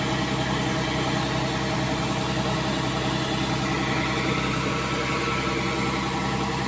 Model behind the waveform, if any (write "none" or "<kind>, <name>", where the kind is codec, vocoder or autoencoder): none